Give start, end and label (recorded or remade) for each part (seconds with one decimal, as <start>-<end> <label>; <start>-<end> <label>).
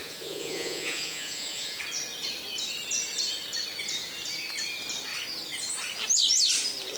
0.0-1.8 remade; 1.8-7.0 recorded